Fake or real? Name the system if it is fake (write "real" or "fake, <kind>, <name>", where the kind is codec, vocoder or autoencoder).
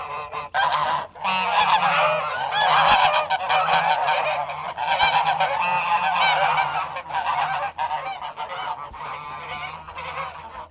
real